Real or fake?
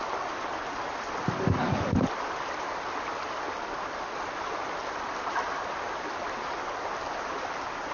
real